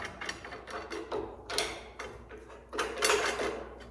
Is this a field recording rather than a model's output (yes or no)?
yes